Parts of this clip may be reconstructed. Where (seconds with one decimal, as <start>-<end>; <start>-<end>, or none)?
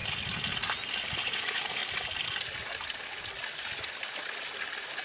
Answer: 1.2-1.8